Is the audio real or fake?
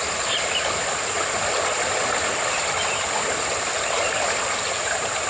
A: real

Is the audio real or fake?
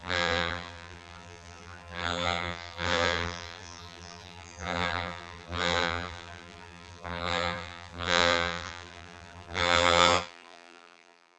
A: fake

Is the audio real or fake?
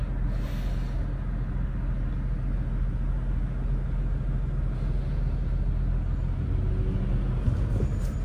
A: real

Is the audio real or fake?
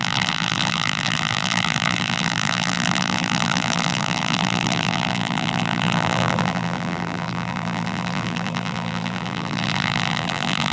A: fake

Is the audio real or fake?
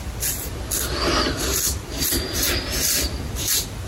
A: real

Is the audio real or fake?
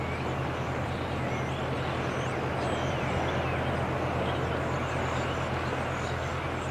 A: real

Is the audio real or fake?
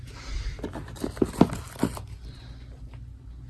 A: real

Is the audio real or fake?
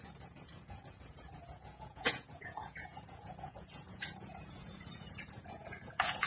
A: fake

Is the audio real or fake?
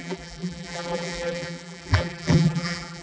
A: fake